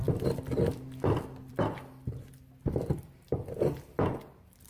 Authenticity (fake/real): fake